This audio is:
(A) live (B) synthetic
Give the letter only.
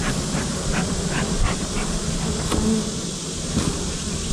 A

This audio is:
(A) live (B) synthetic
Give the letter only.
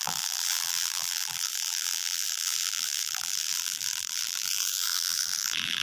B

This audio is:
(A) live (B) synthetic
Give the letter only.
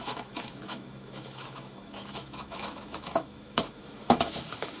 B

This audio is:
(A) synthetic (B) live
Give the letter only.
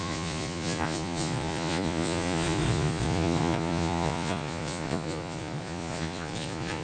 A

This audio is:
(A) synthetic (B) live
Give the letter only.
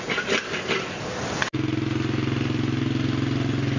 B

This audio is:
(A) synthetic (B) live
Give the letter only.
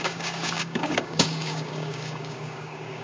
A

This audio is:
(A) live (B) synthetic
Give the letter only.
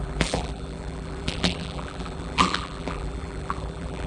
B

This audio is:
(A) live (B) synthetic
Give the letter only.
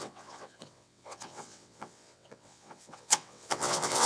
B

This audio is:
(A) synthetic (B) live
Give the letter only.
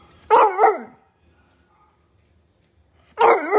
B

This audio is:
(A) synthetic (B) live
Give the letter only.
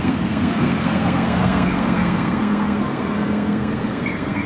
A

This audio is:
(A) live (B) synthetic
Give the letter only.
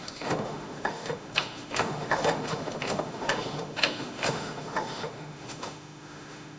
B